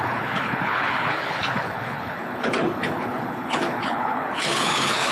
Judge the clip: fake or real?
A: fake